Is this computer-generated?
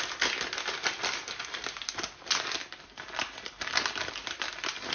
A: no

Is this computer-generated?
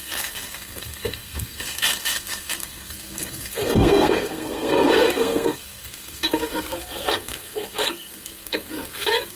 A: yes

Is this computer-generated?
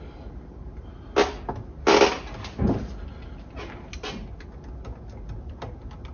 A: no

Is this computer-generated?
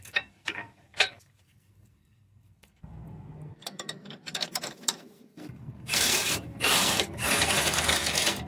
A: yes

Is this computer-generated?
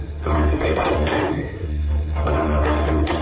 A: yes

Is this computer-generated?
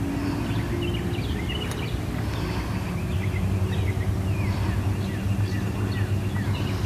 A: no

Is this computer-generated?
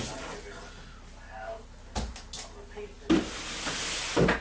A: no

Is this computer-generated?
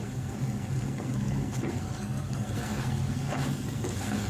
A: yes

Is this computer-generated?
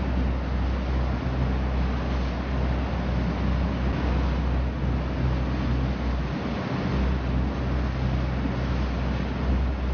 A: no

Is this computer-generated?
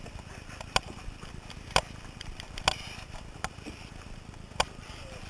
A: no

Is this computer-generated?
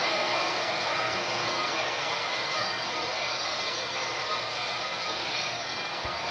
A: yes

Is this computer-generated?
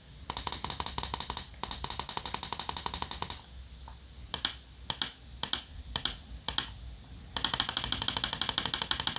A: no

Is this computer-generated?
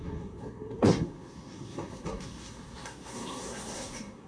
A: yes